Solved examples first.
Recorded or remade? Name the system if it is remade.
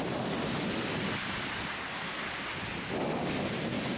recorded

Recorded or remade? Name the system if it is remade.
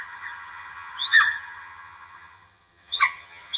remade, vocoder, HiFi-GAN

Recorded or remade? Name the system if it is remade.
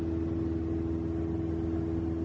recorded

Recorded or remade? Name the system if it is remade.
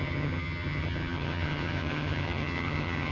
remade, vocoder, HiFi-GAN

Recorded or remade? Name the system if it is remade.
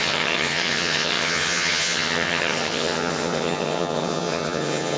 remade, vocoder, HiFi-GAN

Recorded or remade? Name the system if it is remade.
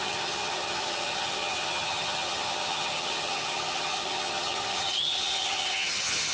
remade, vocoder, HiFi-GAN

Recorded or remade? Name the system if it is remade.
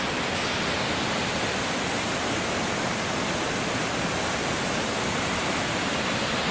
recorded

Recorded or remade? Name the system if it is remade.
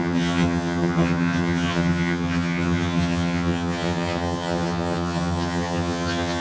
remade, vocoder, HiFi-GAN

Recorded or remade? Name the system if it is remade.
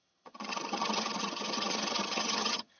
remade, vocoder, HiFi-GAN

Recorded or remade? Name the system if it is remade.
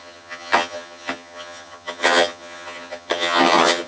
remade, vocoder, HiFi-GAN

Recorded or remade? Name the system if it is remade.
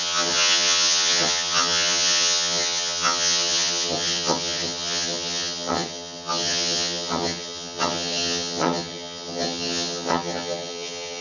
remade, vocoder, HiFi-GAN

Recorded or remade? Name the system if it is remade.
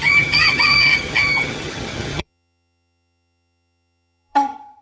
remade, vocoder, HiFi-GAN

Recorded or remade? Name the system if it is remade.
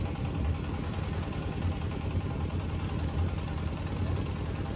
recorded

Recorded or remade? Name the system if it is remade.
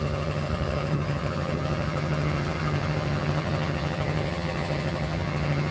remade, vocoder, HiFi-GAN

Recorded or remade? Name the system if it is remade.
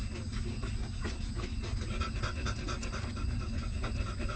recorded